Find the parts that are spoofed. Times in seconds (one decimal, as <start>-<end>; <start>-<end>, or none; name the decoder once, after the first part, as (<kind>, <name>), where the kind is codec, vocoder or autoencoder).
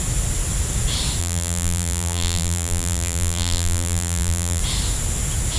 1.2-4.6 (vocoder, BigVGAN v2)